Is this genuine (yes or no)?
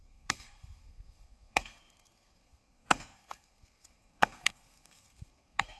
no